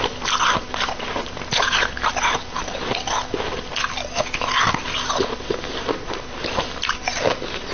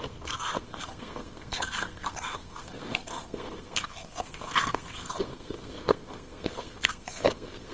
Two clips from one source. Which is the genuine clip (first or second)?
first